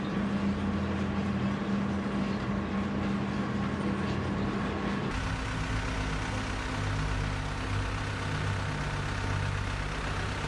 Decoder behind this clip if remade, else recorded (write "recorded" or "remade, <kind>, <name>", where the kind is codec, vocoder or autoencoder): recorded